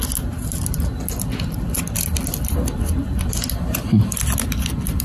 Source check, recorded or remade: recorded